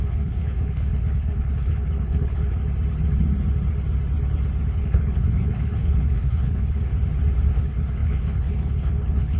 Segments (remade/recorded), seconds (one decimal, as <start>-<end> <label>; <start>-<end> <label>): 0.0-2.6 remade; 2.6-4.7 recorded; 4.7-6.9 remade; 6.9-7.5 recorded; 7.5-9.4 remade